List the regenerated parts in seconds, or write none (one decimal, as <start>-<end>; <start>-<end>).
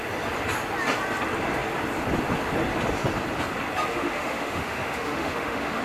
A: 3.9-5.8